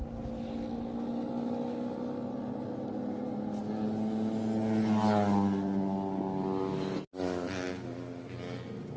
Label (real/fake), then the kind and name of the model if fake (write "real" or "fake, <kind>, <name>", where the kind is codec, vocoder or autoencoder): real